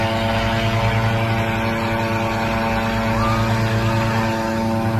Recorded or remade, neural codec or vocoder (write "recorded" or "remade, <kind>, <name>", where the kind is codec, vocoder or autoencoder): recorded